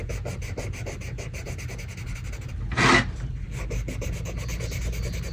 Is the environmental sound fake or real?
real